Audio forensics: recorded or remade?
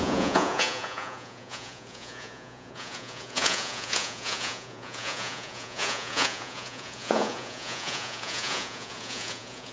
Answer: remade